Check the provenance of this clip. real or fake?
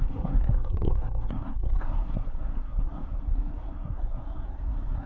fake